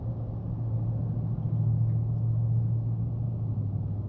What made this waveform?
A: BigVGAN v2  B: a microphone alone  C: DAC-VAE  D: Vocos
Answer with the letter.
B